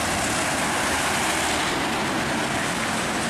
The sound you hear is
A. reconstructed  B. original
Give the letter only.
B